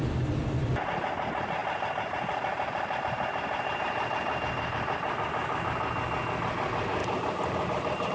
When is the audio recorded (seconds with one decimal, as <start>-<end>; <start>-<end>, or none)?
0.0-8.1